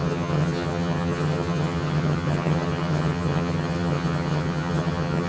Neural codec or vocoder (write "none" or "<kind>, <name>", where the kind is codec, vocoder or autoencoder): vocoder, HiFi-GAN